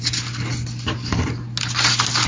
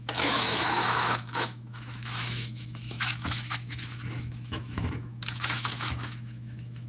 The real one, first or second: first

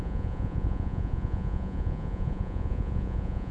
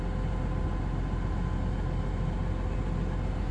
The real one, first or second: second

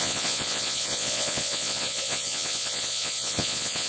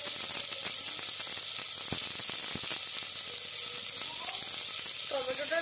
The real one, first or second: second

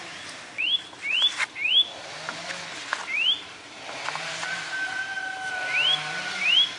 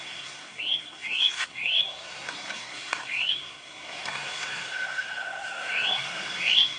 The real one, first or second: first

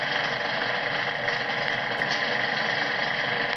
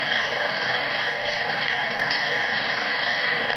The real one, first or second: first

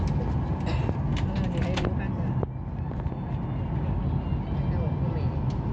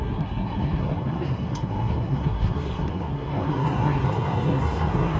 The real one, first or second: first